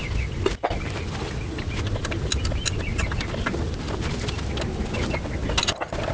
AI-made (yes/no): no